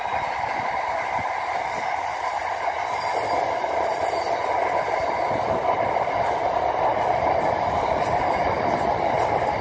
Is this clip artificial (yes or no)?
no